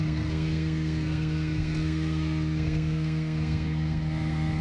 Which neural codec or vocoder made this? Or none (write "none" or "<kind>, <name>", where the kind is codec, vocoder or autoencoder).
codec, SNAC